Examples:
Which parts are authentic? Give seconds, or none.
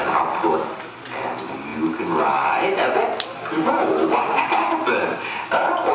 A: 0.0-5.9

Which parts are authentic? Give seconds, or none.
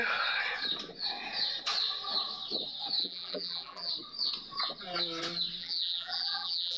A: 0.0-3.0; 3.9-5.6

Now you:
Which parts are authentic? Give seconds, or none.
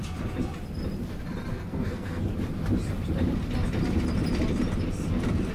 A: 0.0-1.5; 2.2-5.5